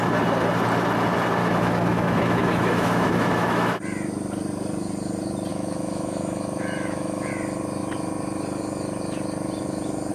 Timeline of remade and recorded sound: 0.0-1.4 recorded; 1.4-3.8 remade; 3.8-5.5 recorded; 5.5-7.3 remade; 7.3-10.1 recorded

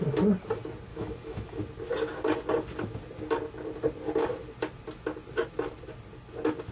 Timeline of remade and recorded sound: 0.0-0.9 recorded; 0.9-1.6 remade; 1.6-6.7 recorded

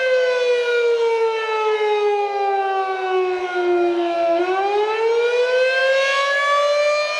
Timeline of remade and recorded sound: 0.0-0.7 recorded; 0.7-4.4 remade; 4.4-7.2 recorded

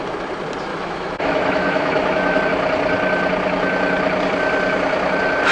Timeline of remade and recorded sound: 0.0-0.7 recorded; 0.7-2.4 remade; 2.4-5.5 recorded

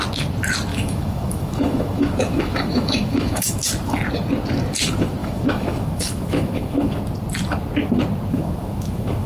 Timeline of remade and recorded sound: 0.0-0.7 recorded; 0.7-3.7 remade; 3.7-5.2 recorded; 5.2-7.0 remade; 7.0-8.3 recorded; 8.3-9.3 remade